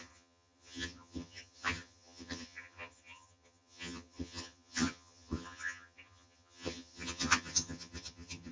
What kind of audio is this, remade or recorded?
remade